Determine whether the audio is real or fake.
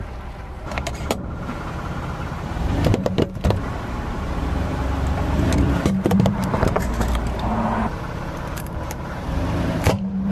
fake